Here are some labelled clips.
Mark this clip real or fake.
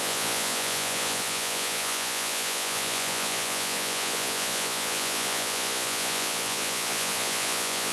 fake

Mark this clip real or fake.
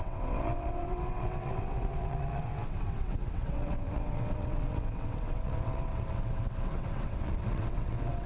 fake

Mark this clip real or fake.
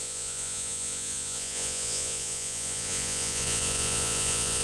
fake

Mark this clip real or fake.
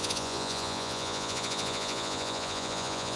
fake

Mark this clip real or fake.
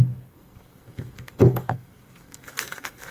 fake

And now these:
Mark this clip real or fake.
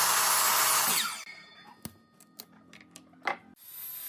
real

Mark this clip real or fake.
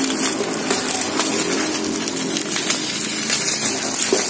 real